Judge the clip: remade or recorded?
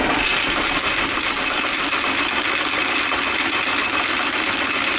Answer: recorded